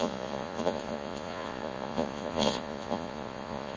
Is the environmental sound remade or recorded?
remade